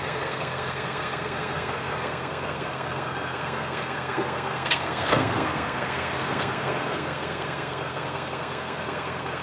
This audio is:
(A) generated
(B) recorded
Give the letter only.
A